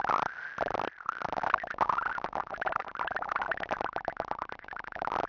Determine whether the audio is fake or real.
real